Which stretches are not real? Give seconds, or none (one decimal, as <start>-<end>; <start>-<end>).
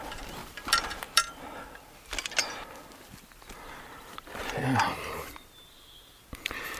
none